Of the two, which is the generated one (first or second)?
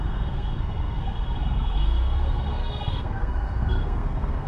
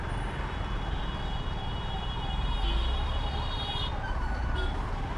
first